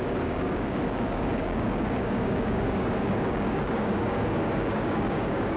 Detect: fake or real fake